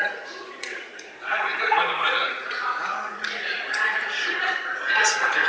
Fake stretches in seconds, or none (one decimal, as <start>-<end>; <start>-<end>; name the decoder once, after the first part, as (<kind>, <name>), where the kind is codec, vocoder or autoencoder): 0.0-5.5 (vocoder, Vocos)